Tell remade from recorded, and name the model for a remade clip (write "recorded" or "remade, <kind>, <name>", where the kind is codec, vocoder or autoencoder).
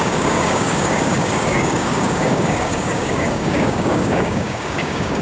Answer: remade, codec, DAC